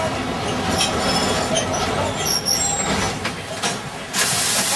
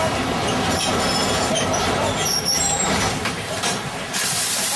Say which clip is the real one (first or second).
first